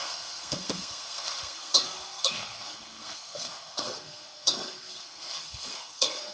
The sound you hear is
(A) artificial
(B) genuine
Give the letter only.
A